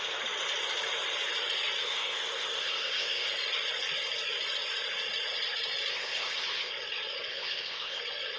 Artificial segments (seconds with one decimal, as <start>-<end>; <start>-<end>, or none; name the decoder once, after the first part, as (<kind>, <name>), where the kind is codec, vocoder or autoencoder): 1.8-3.3 (codec, ZipCodec); 5.9-6.7; 7.3-8.0